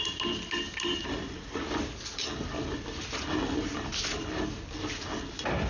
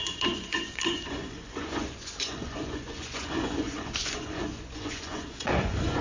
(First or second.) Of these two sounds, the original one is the first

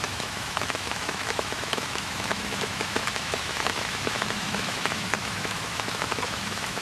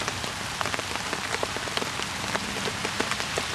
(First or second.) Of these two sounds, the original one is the second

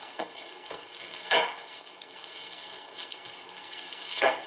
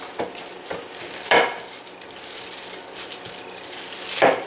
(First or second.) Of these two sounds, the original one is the second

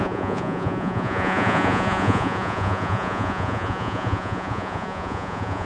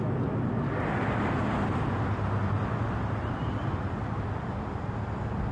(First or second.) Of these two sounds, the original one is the second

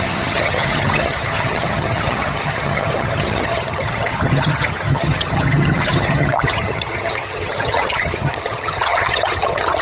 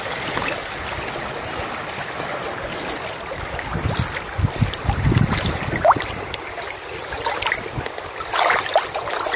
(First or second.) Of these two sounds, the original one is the second